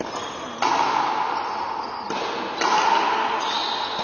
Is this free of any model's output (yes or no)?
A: yes